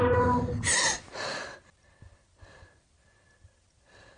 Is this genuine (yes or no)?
yes